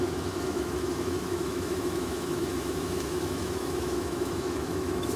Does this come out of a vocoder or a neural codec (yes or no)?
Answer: yes